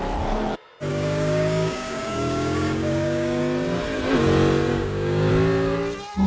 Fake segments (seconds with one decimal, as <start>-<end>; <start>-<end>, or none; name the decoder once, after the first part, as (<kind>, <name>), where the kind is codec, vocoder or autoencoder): 0.9-3.4 (codec, DAC); 4.7-5.3